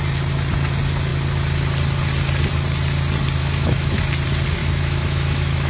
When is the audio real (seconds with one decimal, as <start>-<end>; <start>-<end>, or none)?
0.0-3.4; 4.0-4.6